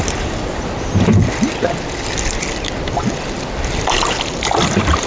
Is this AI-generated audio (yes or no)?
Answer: no